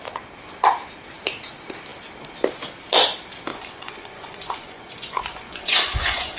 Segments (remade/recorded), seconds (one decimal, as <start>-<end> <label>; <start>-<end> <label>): 0.0-3.5 recorded; 3.5-6.4 remade